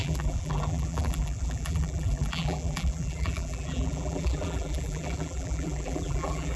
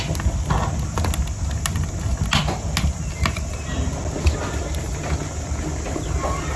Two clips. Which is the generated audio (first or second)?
first